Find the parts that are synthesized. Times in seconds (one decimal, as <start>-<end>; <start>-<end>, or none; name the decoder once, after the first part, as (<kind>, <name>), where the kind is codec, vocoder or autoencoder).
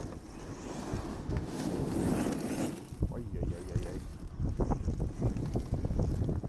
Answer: 1.1-1.9 (autoencoder, DAC-VAE)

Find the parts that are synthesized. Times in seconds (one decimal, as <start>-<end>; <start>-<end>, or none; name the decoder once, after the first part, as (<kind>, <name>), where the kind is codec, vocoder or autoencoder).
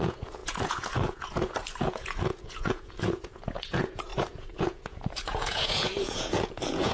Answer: 0.0-6.9 (vocoder, Vocos)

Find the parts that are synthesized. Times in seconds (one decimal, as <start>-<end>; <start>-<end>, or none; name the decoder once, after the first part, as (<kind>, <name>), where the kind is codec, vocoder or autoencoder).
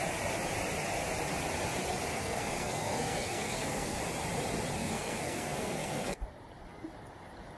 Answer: 2.1-4.0 (codec, SNAC); 4.8-6.2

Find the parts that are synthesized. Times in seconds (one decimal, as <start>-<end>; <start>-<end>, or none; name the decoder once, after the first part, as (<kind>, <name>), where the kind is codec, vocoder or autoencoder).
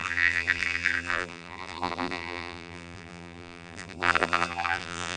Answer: 0.0-5.2 (vocoder, BigVGAN v2)